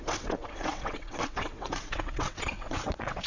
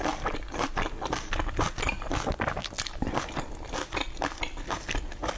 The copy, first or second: first